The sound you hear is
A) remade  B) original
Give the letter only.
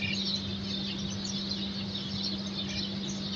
B